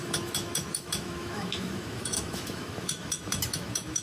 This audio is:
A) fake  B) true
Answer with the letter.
A